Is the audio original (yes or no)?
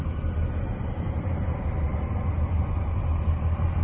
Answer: yes